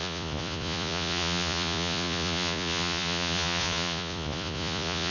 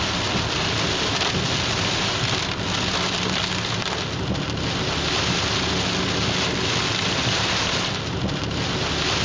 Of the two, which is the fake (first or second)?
first